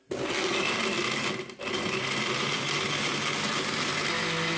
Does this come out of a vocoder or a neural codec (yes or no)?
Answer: no